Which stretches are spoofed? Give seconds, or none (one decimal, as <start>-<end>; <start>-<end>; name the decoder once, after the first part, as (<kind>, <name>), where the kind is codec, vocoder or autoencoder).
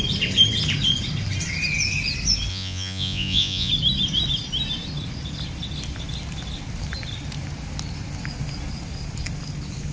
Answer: 2.5-3.7 (vocoder, Vocos)